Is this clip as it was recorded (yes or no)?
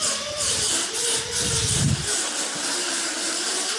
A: no